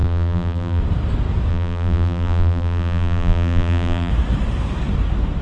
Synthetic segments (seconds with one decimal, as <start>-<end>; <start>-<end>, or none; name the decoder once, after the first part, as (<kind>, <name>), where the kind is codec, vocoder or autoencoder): 0.0-0.8 (vocoder, BigVGAN v2); 1.5-4.1